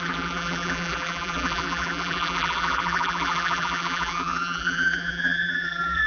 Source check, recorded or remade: remade